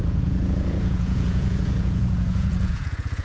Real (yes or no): no